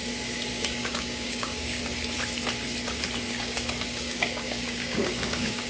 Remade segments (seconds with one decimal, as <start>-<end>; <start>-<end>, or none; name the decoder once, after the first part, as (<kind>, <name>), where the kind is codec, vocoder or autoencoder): 0.5-1.8 (codec, DAC); 3.3-5.7